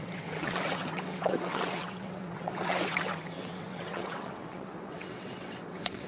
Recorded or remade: remade